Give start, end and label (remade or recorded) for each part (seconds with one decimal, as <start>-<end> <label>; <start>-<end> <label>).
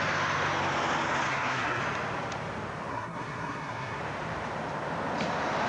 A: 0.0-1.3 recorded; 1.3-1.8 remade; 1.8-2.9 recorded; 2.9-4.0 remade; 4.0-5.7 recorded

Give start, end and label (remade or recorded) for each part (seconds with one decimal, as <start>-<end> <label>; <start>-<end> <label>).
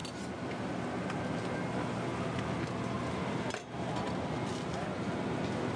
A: 0.0-5.8 recorded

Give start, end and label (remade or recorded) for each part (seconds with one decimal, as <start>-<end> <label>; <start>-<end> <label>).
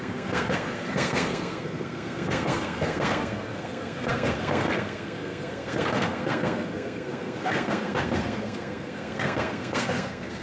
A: 0.0-10.4 remade